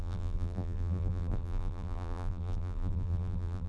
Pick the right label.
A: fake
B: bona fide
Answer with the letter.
A